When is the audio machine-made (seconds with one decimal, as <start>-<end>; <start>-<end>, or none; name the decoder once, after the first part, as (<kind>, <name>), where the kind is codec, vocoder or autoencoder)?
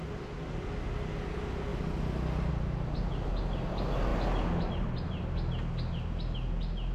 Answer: none